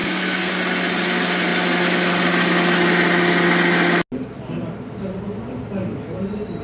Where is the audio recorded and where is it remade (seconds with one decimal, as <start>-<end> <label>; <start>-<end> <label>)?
0.0-0.5 remade; 0.5-6.6 recorded